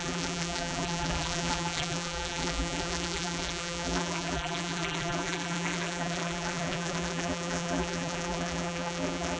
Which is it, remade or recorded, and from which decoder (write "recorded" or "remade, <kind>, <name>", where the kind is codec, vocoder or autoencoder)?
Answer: remade, vocoder, BigVGAN v2